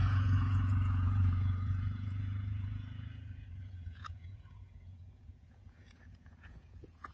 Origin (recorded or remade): remade